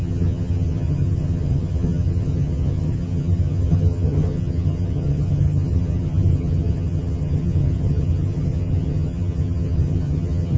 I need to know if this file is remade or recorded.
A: remade